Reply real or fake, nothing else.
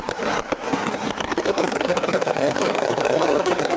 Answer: fake